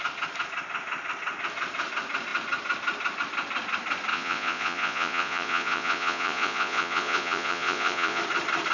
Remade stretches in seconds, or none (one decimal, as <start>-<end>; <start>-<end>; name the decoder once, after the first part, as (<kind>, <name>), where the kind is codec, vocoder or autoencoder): 4.1-8.2 (vocoder, Vocos)